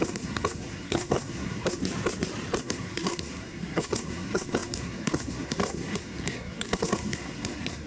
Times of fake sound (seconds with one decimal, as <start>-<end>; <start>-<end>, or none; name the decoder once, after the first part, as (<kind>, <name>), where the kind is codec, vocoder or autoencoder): 0.0-1.8 (codec, SNAC); 2.6-7.9